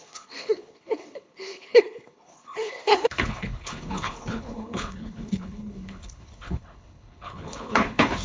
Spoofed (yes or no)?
yes